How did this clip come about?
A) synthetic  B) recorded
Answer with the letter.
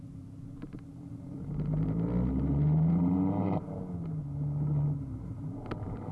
B